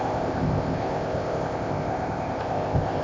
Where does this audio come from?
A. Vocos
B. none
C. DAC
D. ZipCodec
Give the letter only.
D